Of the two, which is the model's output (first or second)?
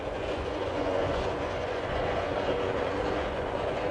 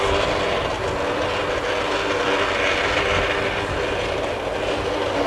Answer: first